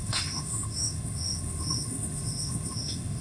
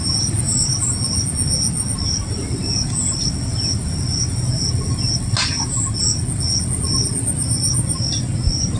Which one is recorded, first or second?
second